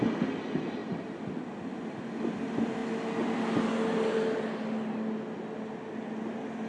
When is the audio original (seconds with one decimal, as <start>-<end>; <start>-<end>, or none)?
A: 0.0-0.8; 1.5-6.7